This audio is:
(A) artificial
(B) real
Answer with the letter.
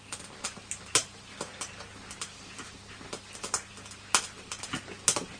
B